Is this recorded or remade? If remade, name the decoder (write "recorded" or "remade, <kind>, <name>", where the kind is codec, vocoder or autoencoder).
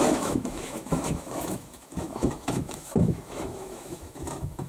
remade, autoencoder, DAC-VAE